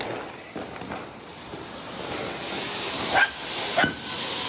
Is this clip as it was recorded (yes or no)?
yes